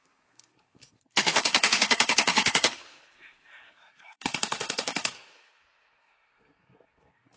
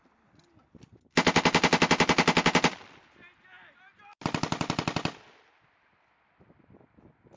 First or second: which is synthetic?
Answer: first